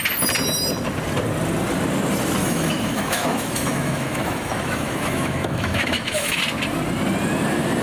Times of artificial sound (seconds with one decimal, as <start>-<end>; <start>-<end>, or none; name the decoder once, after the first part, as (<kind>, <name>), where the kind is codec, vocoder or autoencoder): 2.4-6.4 (autoencoder, DAC-VAE)

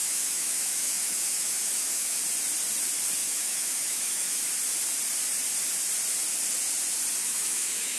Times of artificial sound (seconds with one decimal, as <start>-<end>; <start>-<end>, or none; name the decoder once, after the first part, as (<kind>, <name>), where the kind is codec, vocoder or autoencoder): 0.0-2.2 (autoencoder, DAC-VAE); 3.2-4.5; 7.2-8.0

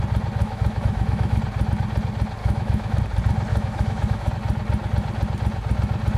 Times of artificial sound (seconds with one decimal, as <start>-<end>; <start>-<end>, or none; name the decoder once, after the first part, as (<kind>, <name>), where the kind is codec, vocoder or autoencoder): 0.4-1.4 (autoencoder, DAC-VAE); 2.4-3.0; 3.5-4.3

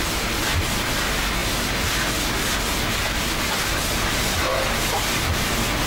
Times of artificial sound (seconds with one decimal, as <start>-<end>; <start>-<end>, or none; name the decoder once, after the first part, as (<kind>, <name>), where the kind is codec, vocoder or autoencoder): none

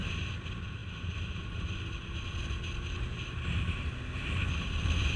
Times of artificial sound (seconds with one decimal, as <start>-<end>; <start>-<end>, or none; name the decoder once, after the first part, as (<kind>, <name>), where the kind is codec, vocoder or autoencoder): none

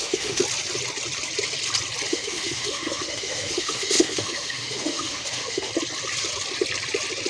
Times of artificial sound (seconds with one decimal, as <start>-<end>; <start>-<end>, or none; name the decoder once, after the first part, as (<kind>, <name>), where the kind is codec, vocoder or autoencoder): 0.0-0.4 (autoencoder, DAC-VAE); 2.1-5.7

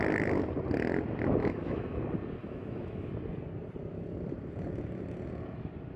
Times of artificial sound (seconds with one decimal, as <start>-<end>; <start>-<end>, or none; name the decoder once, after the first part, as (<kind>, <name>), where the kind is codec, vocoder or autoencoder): 1.4-2.0 (autoencoder, DAC-VAE); 2.4-3.1

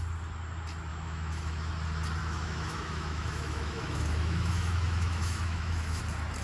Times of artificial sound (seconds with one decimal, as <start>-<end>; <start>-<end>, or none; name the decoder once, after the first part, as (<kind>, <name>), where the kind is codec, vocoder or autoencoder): 0.9-1.7 (autoencoder, DAC-VAE); 2.2-6.0